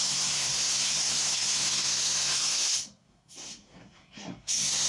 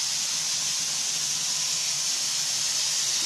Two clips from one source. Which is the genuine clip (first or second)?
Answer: second